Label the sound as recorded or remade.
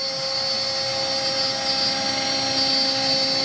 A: recorded